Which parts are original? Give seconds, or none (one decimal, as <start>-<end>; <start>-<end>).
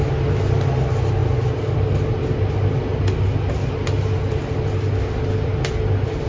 0.0-6.3